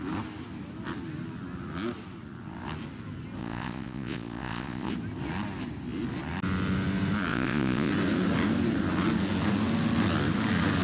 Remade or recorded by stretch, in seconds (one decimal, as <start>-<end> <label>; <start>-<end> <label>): 0.0-3.4 recorded; 3.4-4.9 remade; 4.9-7.3 recorded; 7.3-7.9 remade; 7.9-10.8 recorded